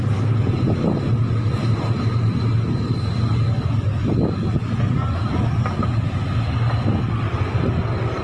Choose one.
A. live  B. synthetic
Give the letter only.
A